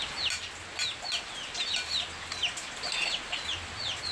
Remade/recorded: recorded